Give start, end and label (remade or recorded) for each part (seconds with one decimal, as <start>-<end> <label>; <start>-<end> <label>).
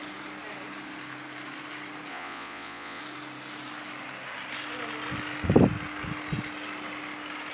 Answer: 0.0-2.1 recorded; 2.1-3.0 remade; 3.0-7.5 recorded